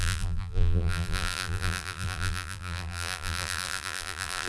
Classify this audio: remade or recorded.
remade